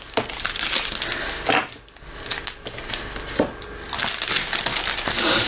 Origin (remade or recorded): recorded